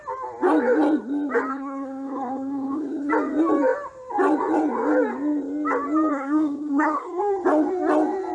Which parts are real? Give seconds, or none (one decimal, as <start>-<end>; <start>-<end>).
0.0-1.5; 3.1-6.1; 7.2-8.3